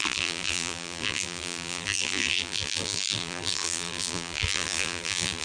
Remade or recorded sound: remade